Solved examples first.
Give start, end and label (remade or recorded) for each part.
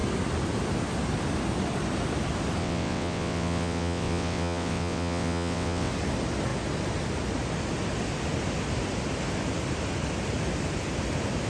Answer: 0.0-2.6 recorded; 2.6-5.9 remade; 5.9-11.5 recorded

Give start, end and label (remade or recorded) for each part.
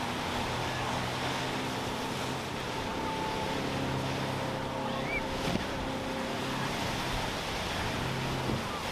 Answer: 0.0-0.6 recorded; 0.6-1.4 remade; 1.4-8.9 recorded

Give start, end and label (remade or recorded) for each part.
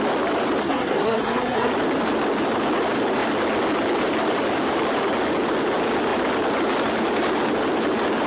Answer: 0.0-0.6 recorded; 0.6-1.7 remade; 1.7-8.3 recorded